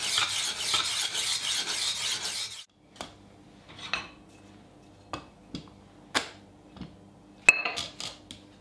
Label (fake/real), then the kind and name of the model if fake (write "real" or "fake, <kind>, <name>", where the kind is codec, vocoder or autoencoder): real